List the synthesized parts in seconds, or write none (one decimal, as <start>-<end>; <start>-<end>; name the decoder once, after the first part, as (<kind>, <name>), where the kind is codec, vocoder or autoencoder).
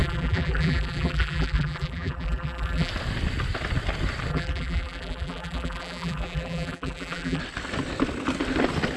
0.0-2.9 (vocoder, BigVGAN v2); 4.3-7.4